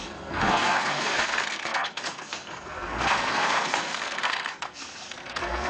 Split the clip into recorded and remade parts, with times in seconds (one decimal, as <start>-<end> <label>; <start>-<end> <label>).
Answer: 0.0-5.7 remade